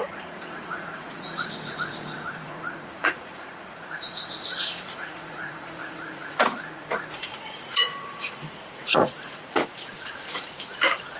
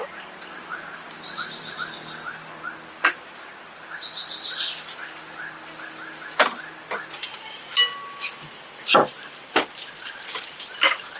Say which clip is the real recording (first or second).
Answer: second